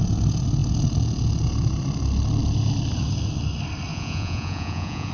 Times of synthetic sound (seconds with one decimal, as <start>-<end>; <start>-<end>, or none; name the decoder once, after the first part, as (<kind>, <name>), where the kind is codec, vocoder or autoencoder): 3.9-5.1 (vocoder, Vocos)